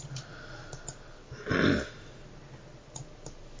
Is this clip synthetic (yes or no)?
no